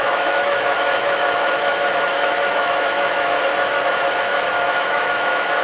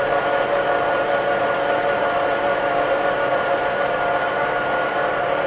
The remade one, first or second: first